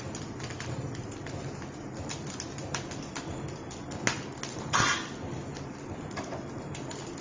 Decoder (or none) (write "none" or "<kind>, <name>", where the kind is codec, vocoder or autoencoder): none